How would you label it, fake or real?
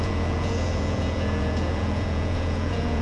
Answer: fake